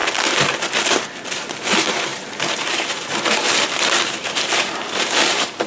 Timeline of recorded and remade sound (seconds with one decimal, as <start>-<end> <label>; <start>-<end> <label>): 0.0-1.7 recorded; 1.7-5.7 remade